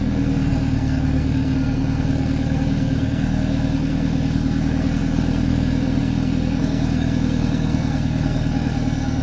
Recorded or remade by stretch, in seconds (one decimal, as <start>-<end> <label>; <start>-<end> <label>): 0.0-9.2 remade